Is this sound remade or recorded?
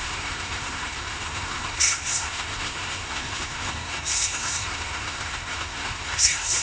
remade